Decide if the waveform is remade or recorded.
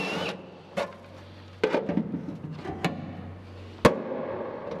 recorded